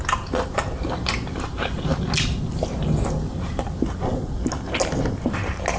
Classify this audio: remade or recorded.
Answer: recorded